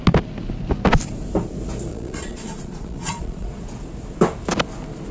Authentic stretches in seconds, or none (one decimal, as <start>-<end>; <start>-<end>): 0.0-1.9; 3.6-5.1